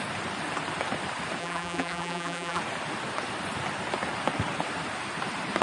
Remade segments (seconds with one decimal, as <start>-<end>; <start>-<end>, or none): 1.4-2.6